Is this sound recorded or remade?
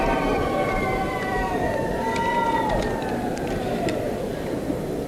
remade